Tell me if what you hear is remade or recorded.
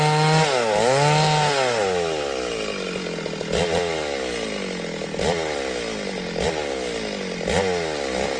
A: recorded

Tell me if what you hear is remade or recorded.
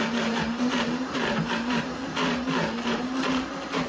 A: remade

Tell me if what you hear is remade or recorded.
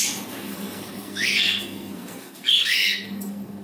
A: remade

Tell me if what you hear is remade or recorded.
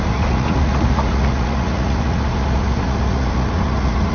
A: remade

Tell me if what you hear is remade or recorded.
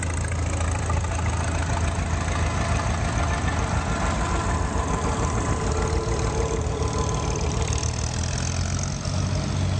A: recorded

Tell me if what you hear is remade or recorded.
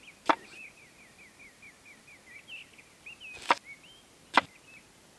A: recorded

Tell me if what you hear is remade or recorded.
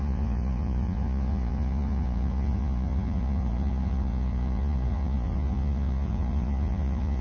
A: remade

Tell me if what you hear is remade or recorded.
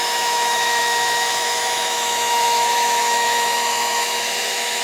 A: remade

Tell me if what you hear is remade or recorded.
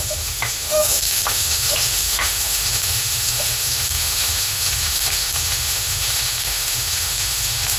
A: remade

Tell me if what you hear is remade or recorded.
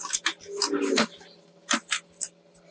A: recorded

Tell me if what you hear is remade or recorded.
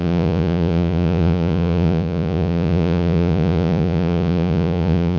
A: remade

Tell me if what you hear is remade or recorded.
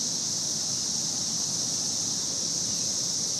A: recorded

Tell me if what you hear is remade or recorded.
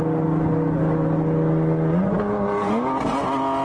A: recorded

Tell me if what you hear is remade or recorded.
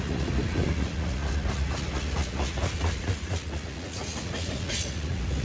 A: remade